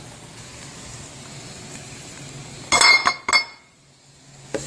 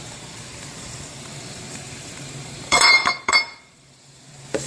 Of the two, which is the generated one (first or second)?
second